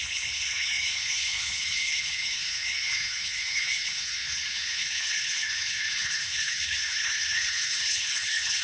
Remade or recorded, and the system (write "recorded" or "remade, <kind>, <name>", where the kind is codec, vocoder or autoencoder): remade, codec, HILCodec